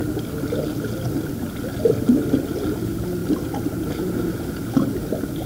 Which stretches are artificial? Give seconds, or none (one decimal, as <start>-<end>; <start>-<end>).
none